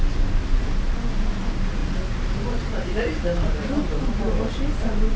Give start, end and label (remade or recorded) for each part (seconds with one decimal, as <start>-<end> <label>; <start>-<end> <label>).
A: 0.0-5.2 recorded